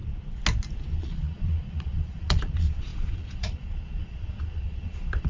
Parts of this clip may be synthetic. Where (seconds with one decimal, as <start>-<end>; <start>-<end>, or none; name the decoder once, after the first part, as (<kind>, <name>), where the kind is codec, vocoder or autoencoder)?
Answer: 1.0-5.3 (vocoder, Vocos)